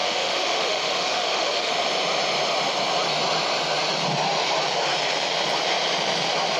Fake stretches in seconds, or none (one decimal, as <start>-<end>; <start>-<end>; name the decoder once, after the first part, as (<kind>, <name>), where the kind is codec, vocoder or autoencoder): 0.0-1.7 (autoencoder, DAC-VAE)

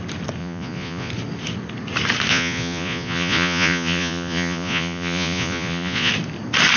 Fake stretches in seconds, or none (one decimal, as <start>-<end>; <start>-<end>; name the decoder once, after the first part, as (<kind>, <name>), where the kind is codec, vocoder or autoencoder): 0.4-1.1 (vocoder, Vocos); 2.3-6.1

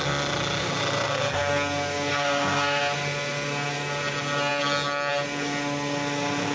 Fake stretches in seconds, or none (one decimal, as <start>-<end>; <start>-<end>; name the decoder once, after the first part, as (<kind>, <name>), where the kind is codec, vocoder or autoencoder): 0.6-1.4 (codec, SNAC); 2.1-2.8

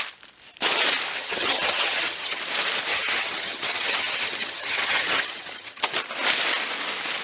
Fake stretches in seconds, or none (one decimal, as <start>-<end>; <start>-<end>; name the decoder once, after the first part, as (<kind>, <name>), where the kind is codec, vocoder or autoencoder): 1.2-2.4 (vocoder, HiFi-GAN); 2.9-5.9

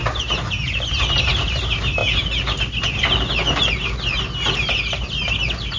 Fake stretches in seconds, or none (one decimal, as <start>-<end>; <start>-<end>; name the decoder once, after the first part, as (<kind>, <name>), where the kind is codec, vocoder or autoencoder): none

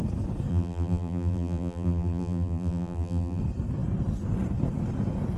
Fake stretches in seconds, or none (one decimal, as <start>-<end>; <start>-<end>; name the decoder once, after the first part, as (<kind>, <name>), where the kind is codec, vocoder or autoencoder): 0.5-3.4 (vocoder, BigVGAN v2)

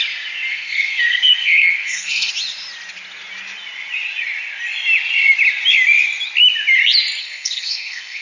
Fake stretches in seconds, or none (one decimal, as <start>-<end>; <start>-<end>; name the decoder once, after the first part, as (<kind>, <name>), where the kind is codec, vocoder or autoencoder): 0.5-2.3 (codec, SNAC); 7.2-8.2